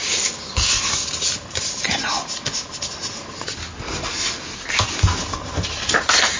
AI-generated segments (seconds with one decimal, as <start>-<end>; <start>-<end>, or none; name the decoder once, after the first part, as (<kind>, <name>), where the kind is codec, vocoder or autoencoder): 0.0-0.7 (codec, DAC)